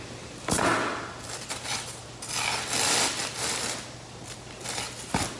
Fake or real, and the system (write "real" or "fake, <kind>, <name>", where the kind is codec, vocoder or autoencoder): real